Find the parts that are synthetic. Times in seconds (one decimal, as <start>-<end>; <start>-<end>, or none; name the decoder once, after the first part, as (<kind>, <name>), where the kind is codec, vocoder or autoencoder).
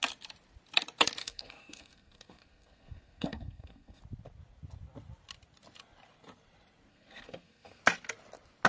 1.2-4.0 (codec, SNAC); 6.9-7.8